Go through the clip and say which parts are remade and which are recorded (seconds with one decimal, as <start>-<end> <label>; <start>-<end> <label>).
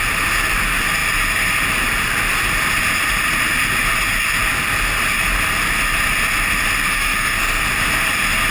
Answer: 0.0-6.9 recorded; 6.9-7.6 remade; 7.6-8.5 recorded